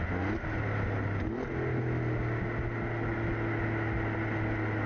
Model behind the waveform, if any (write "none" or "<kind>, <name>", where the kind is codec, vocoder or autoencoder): none